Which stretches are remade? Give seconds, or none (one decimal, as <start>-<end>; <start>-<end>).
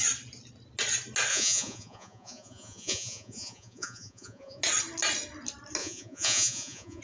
1.3-4.6; 5.8-7.0